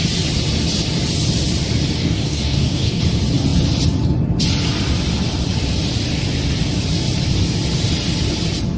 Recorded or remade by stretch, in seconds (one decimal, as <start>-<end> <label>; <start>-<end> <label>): 0.0-2.0 recorded; 2.0-3.0 remade; 3.0-8.8 recorded